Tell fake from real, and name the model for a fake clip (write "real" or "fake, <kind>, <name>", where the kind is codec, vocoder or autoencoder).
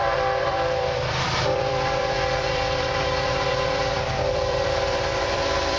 fake, vocoder, BigVGAN v2